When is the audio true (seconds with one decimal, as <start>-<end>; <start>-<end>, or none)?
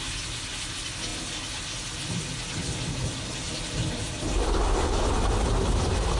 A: 0.0-6.2